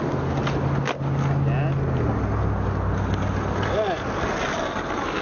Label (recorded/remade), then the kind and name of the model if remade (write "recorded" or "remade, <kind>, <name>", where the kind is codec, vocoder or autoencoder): recorded